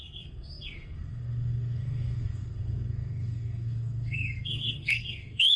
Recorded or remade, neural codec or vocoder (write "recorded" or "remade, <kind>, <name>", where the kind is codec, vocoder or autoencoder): remade, codec, SNAC